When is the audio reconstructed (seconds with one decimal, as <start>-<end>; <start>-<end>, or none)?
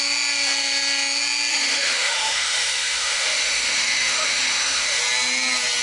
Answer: 1.5-5.0